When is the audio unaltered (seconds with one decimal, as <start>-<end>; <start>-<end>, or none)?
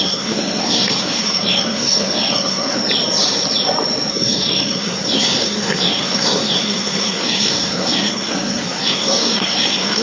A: 2.8-4.1